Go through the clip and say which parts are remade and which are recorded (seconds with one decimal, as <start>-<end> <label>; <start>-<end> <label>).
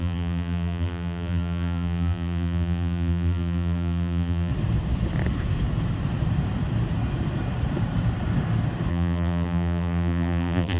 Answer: 0.0-4.5 remade; 4.5-8.9 recorded; 8.9-10.8 remade